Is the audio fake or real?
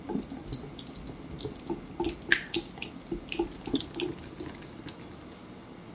real